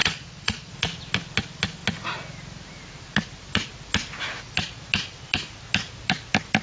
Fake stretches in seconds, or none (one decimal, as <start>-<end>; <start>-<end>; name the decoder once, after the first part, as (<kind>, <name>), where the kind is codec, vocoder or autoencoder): 0.0-0.7 (vocoder, Vocos)